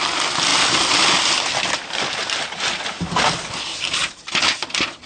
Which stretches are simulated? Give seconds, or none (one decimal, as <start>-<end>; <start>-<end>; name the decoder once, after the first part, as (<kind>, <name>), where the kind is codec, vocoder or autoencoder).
none